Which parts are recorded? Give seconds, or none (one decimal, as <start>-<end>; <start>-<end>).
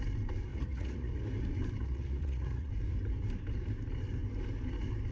0.0-0.5; 1.1-1.8; 2.7-5.1